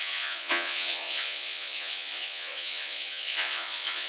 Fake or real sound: fake